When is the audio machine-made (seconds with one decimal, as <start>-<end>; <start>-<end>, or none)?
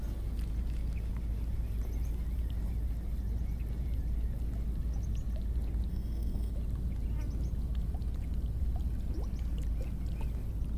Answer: 5.9-6.5